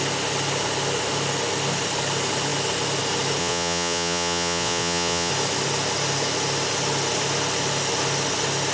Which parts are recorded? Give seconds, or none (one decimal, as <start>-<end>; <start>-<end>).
0.0-3.4; 5.3-8.7